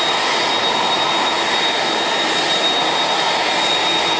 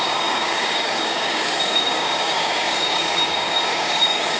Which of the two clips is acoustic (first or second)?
first